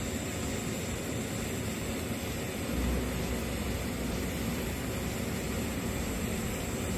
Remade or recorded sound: recorded